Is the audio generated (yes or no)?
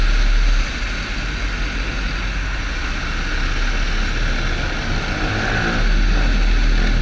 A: no